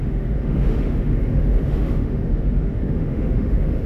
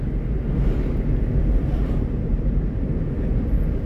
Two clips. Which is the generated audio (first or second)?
first